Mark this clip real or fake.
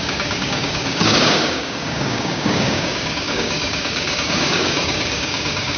fake